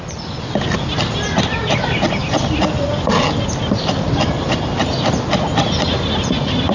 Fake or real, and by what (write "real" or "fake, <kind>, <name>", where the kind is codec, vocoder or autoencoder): real